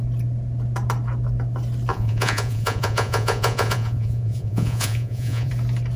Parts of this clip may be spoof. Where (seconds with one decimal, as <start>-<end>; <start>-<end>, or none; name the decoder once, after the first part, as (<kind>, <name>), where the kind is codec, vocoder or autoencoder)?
1.9-5.5 (vocoder, Vocos)